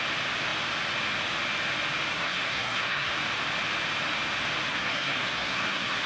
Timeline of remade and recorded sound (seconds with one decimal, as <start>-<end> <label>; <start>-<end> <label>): 0.0-2.1 recorded; 2.1-3.1 remade; 3.1-4.7 recorded; 4.7-6.1 remade